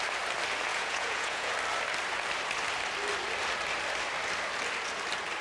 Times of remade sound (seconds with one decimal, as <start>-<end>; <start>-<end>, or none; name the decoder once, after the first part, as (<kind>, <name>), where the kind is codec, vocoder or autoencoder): 0.7-1.5 (vocoder, Vocos)